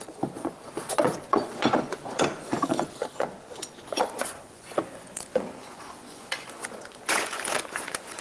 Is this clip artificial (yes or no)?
yes